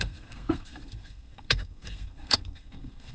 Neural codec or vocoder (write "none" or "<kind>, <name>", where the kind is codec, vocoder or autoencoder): codec, SNAC